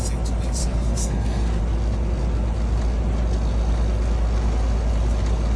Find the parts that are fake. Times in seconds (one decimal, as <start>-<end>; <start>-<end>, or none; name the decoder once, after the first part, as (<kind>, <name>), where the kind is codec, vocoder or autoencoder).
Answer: 0.6-1.6 (codec, SNAC)